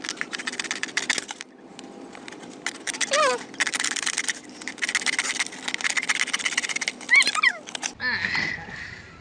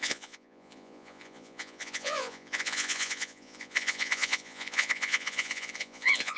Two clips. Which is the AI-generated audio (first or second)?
second